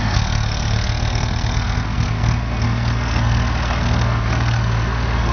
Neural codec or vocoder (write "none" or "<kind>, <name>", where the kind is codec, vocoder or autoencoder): codec, SNAC